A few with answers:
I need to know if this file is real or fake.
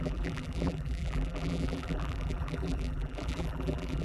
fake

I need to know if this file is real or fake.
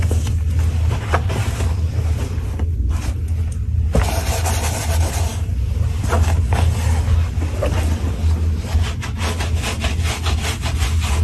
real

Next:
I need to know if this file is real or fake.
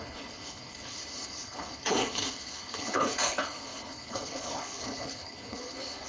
fake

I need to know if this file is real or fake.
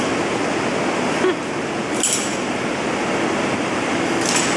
real